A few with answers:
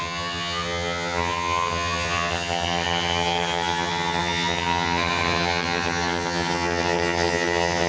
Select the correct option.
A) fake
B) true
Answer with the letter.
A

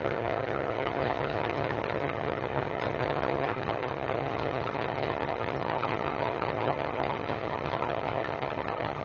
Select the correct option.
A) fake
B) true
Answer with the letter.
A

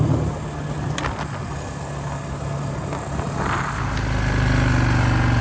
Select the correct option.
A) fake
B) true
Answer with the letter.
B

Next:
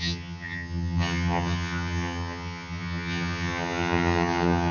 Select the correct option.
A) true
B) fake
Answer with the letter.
B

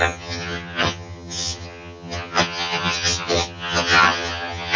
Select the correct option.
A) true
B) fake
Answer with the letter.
B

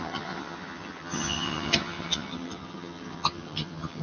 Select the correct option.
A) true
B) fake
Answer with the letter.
B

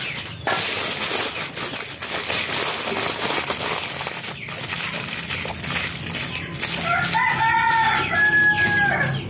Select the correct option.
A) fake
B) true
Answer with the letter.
B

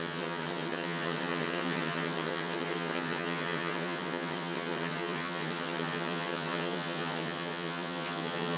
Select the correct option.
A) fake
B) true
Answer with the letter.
A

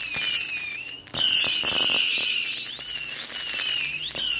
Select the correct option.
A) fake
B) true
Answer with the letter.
B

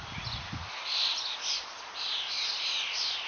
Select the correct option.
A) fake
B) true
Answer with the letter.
B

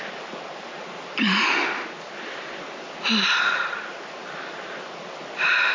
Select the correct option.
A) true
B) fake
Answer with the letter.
A